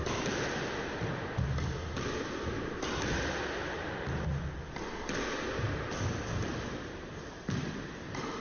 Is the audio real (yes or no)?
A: yes